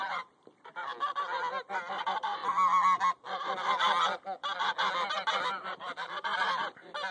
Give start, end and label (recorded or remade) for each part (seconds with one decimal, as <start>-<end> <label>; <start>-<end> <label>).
0.0-0.9 remade; 0.9-1.7 recorded; 1.7-2.4 remade; 2.4-5.1 recorded; 5.1-7.1 remade